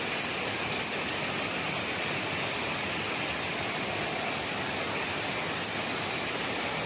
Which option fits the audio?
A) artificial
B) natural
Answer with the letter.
B